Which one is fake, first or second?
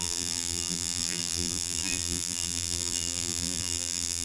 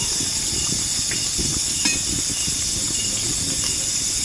first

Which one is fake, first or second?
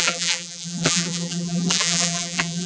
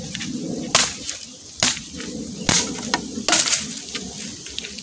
first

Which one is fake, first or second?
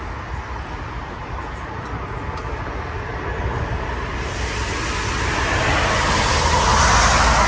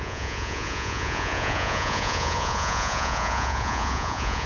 second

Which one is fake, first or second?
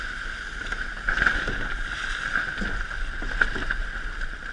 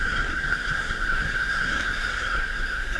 second